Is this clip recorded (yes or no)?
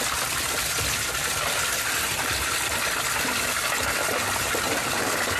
yes